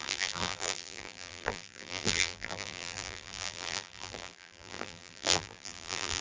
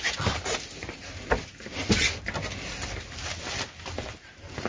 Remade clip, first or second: first